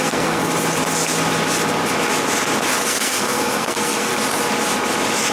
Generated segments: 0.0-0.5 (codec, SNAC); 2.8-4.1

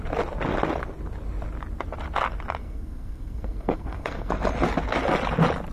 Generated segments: 2.6-4.3 (codec, SNAC)

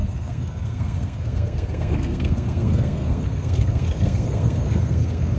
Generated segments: 0.0-5.4 (codec, SNAC)

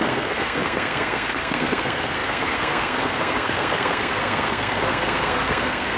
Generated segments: 0.0-6.0 (codec, SNAC)